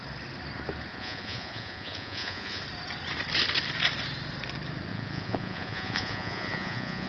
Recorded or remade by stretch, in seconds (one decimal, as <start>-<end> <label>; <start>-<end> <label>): 0.0-0.9 recorded; 0.9-2.6 remade; 2.6-4.9 recorded; 4.9-7.1 remade